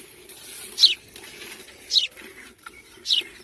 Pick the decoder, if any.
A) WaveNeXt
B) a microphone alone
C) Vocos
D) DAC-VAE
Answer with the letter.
B